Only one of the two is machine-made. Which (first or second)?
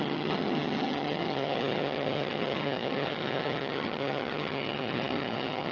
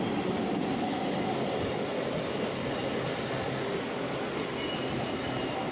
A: first